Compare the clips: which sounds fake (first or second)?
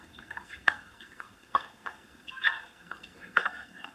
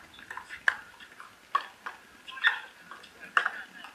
first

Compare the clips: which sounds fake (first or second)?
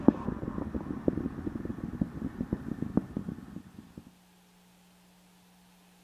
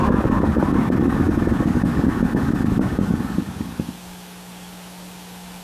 second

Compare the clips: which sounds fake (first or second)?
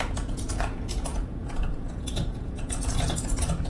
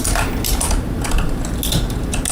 first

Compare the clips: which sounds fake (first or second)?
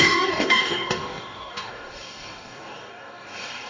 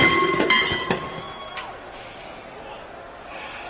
first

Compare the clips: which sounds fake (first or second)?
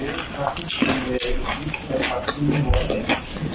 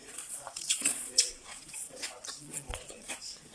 second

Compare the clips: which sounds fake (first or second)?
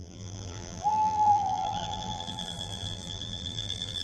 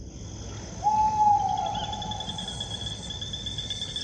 first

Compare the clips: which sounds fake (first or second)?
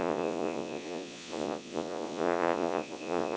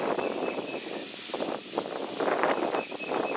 first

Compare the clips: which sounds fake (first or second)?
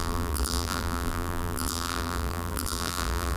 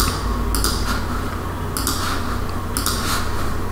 first